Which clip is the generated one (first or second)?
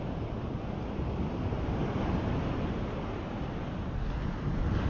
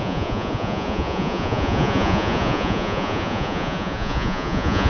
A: second